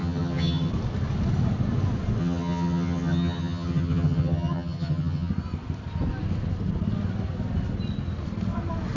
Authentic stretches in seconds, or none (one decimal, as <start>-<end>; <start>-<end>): 0.7-2.2; 5.3-9.0